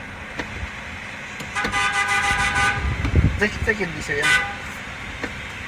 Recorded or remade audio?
recorded